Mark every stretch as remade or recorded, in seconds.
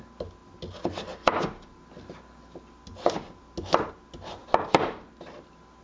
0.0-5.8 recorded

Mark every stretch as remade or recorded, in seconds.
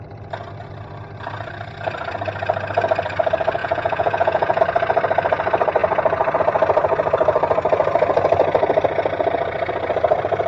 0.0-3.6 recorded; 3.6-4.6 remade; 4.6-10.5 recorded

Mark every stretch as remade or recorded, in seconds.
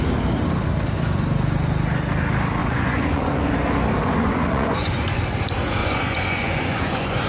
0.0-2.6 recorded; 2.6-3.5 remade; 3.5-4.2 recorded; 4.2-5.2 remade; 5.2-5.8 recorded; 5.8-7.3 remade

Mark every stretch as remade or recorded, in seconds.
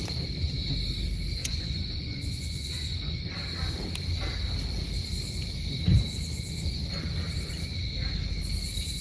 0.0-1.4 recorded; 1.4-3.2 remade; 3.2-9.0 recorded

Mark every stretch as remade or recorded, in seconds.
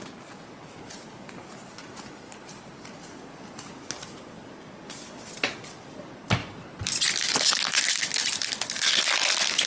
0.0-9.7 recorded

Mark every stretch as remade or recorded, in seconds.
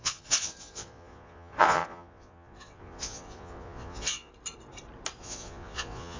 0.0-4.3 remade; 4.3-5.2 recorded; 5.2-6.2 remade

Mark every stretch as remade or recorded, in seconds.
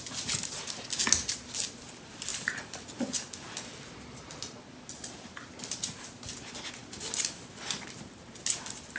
0.0-9.0 recorded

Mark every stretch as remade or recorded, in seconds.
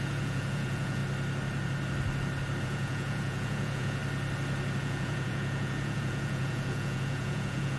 0.0-1.0 remade; 1.0-2.6 recorded; 2.6-4.0 remade; 4.0-4.8 recorded; 4.8-7.8 remade